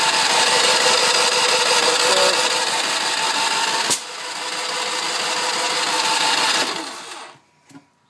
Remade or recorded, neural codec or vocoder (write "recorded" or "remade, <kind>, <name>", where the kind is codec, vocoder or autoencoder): recorded